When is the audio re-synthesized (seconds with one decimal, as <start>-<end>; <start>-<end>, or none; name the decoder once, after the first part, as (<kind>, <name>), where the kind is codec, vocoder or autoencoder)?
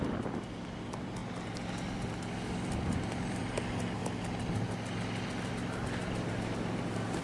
none